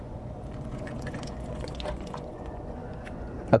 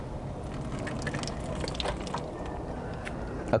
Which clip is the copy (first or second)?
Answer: first